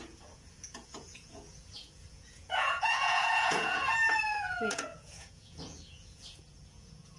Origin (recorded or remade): remade